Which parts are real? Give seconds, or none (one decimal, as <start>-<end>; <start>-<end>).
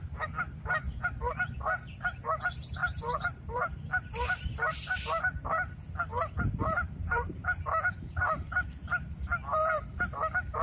0.0-2.8; 4.7-6.1; 10.0-10.6